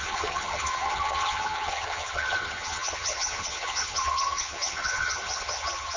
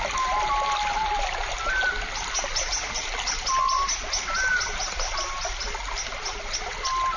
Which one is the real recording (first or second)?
second